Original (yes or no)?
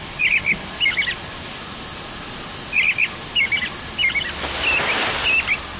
yes